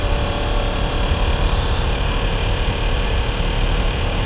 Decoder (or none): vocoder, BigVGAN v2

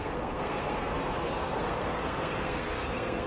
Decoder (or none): codec, SNAC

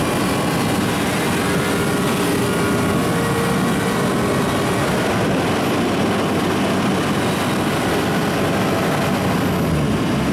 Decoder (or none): none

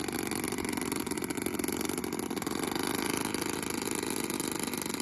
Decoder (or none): none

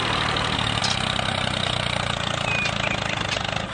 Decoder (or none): none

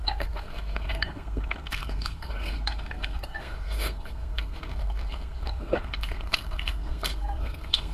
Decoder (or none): codec, SNAC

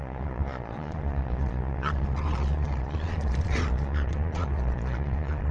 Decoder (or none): vocoder, Vocos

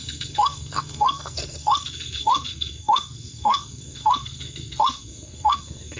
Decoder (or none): codec, SNAC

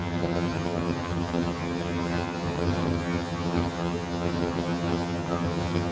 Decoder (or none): vocoder, HiFi-GAN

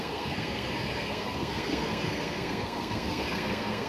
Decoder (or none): codec, SNAC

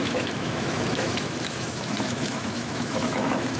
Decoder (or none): autoencoder, DAC-VAE